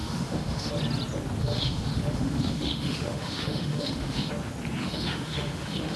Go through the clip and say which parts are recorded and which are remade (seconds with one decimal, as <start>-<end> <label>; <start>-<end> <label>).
0.0-0.7 remade; 0.7-1.4 recorded; 1.4-4.3 remade; 4.3-4.8 recorded; 4.8-6.0 remade